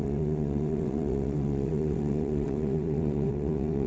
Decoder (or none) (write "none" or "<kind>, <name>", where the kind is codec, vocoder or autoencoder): vocoder, WaveNeXt